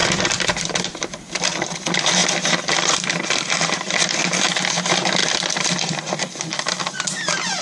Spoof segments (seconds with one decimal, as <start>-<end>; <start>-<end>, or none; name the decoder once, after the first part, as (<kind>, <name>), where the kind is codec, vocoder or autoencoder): 0.0-0.8 (vocoder, BigVGAN v2); 2.2-4.4

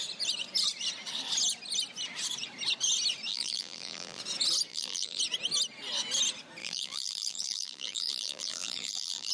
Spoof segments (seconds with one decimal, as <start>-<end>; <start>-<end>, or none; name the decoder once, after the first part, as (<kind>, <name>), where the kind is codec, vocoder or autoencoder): 3.3-4.2 (vocoder, BigVGAN v2); 4.7-5.2; 6.6-9.3

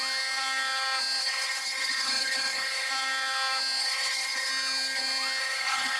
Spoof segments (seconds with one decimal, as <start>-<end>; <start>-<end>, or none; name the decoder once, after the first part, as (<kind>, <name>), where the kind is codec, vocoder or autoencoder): 1.2-2.9 (codec, HILCodec); 3.8-4.5; 5.4-6.0

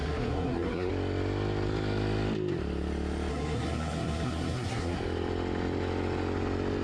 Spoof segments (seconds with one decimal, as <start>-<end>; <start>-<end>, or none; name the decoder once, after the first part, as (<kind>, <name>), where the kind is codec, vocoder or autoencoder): 0.0-0.9 (codec, SNAC); 3.3-5.0